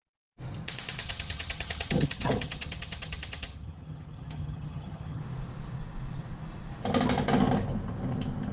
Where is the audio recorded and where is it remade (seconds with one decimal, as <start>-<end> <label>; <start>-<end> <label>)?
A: 0.0-1.0 recorded; 1.0-5.2 remade; 5.2-8.5 recorded